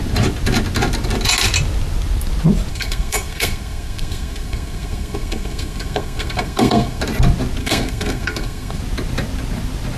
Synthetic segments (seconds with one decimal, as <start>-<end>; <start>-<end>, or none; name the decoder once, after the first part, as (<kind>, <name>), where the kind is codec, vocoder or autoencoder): 2.7-7.0 (codec, SNAC); 7.6-8.8